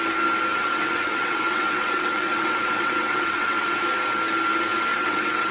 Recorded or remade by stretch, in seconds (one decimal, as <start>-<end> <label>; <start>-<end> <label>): 0.0-0.5 recorded; 0.5-3.8 remade; 3.8-4.9 recorded; 4.9-5.5 remade